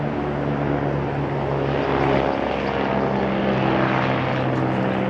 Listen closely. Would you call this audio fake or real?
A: real